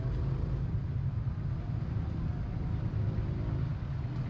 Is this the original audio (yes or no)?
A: yes